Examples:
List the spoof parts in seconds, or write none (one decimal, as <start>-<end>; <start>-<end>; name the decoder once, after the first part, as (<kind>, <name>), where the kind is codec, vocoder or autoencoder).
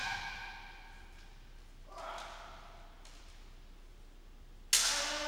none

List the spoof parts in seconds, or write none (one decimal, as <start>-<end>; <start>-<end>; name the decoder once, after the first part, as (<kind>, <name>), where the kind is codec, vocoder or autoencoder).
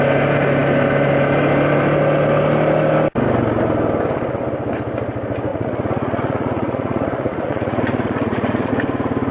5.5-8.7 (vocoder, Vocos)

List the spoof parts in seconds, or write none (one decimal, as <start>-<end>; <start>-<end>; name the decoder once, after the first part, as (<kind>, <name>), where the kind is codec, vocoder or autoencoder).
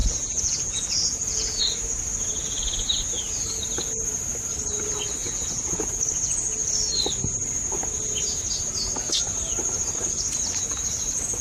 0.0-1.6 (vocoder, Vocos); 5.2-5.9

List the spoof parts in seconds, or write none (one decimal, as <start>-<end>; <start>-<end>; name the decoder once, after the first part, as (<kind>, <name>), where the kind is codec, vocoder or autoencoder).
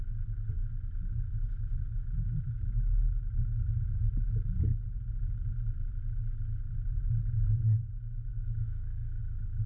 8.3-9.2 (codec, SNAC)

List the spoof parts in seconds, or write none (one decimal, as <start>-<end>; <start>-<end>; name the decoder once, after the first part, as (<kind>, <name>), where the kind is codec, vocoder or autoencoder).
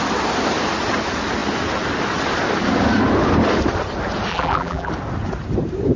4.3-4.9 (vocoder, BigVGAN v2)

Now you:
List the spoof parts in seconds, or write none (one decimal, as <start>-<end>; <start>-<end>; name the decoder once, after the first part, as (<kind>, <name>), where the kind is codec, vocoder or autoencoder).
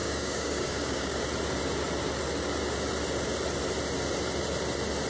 0.0-1.2 (codec, DAC)